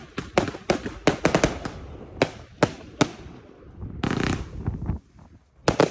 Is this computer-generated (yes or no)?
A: no